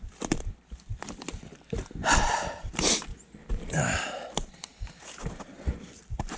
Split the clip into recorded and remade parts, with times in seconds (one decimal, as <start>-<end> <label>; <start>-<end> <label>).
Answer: 0.0-2.0 remade; 2.0-3.5 recorded; 3.5-6.4 remade